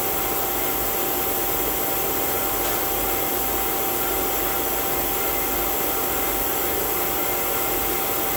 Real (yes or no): yes